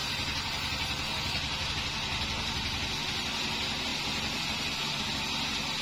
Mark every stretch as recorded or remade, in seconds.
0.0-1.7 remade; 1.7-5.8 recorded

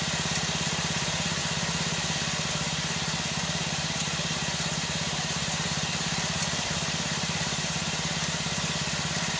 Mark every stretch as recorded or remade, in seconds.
0.0-1.4 remade; 1.4-2.5 recorded; 2.5-9.4 remade

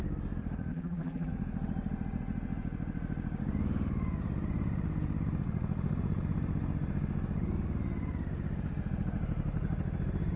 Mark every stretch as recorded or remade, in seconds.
0.0-0.7 recorded; 0.7-1.3 remade; 1.3-10.4 recorded

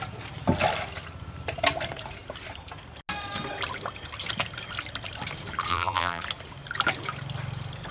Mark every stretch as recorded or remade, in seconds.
0.0-5.7 recorded; 5.7-6.2 remade; 6.2-7.9 recorded

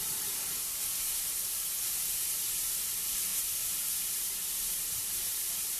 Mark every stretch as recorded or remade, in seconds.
0.0-3.3 remade; 3.3-4.6 recorded; 4.6-5.8 remade

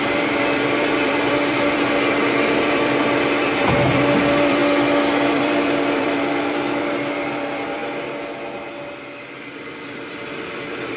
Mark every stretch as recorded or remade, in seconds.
0.0-4.6 remade; 4.6-5.3 recorded; 5.3-7.8 remade; 7.8-9.2 recorded; 9.2-11.0 remade

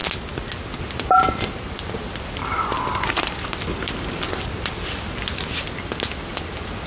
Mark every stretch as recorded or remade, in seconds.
0.0-0.8 recorded; 0.8-6.9 remade

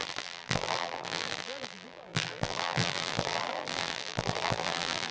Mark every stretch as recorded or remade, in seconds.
0.0-5.1 remade